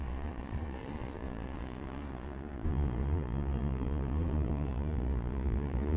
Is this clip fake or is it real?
fake